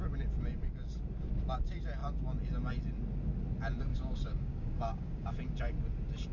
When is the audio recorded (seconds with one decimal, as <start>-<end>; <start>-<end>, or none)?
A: 0.0-3.9; 5.3-6.3

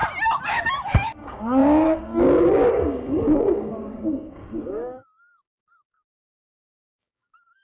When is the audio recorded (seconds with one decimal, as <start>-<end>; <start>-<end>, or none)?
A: 0.0-0.5